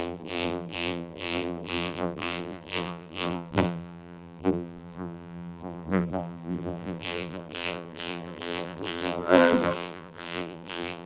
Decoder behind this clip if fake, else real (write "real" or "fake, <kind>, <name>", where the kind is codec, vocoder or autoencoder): fake, vocoder, BigVGAN v2